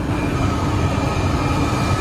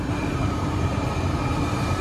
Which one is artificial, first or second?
second